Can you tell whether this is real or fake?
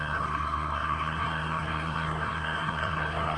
fake